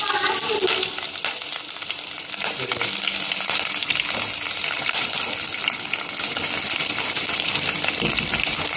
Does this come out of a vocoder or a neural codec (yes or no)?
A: no